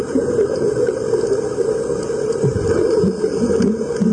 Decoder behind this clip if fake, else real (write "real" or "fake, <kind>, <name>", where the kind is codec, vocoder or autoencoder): real